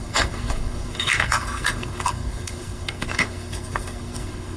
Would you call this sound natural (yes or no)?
no